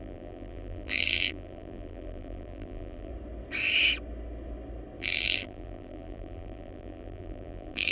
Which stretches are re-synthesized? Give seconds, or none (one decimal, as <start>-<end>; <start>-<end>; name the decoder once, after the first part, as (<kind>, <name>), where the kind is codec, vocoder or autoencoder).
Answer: 0.0-3.1 (vocoder, BigVGAN v2); 5.0-7.9